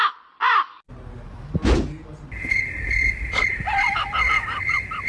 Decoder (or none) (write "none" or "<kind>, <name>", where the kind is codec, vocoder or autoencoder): none